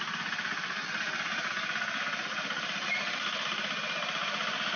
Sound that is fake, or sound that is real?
real